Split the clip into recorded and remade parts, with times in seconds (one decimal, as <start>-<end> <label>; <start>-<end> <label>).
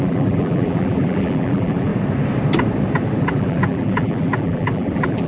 0.0-1.9 remade; 1.9-3.2 recorded; 3.2-5.3 remade